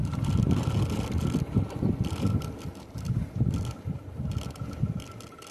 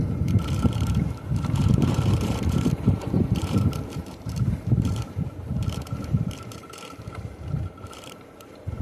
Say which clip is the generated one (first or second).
second